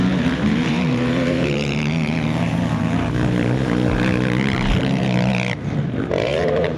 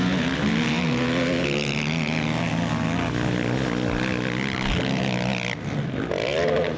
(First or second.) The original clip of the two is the second